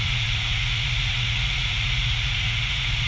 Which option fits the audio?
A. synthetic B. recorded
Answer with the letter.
A